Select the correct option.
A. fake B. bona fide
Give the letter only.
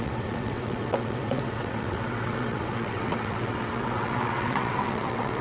A